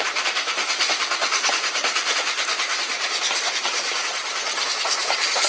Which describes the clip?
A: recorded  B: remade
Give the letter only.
B